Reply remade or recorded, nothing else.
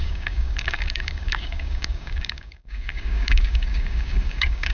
remade